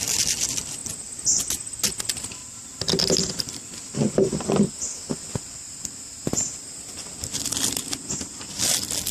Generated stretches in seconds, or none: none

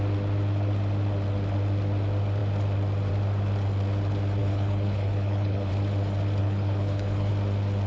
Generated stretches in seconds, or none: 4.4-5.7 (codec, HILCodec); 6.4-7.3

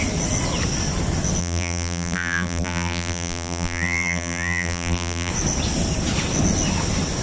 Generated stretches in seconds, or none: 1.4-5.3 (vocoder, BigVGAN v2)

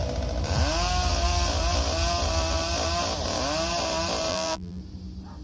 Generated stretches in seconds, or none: 4.3-4.8 (vocoder, BigVGAN v2)

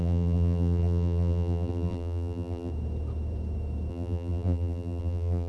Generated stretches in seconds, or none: 0.0-2.7 (vocoder, BigVGAN v2); 3.9-5.5

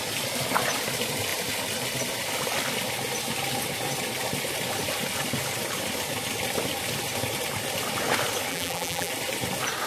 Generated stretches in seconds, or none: 8.5-9.1 (vocoder, BigVGAN v2)